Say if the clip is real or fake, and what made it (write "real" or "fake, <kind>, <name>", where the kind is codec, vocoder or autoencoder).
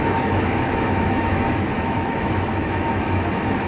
fake, autoencoder, DAC-VAE